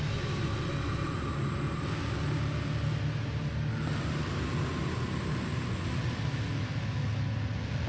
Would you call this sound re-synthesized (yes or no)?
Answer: no